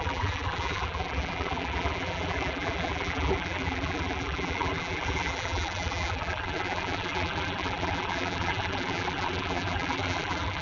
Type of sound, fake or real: fake